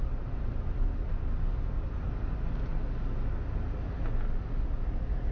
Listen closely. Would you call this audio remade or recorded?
recorded